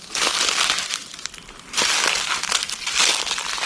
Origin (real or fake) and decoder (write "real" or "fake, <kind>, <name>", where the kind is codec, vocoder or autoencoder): real